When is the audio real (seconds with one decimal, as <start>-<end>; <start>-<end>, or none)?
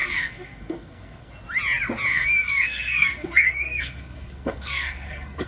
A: 1.3-2.1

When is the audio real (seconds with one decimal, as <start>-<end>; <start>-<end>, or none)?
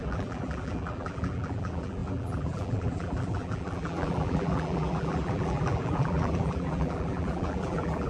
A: none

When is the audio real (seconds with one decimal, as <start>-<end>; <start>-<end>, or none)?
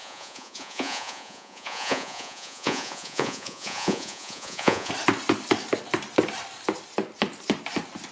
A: 4.9-8.1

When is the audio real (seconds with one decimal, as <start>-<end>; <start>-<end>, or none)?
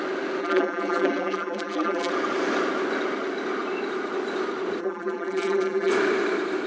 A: 0.0-0.4; 2.1-4.8; 5.9-6.7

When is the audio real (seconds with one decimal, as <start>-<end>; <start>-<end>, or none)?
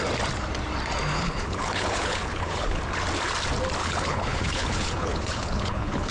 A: 0.0-1.1; 2.8-3.8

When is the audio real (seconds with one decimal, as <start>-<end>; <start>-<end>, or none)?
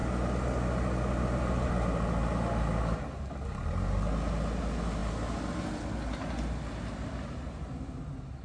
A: 0.0-8.4